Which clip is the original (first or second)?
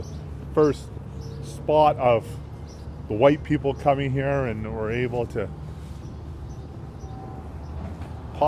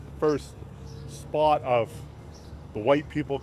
first